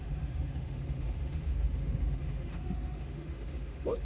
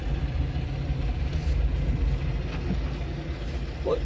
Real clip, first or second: second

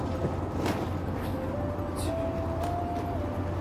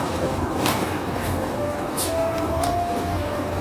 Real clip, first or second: first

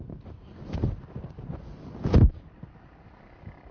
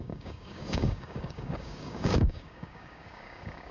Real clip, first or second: first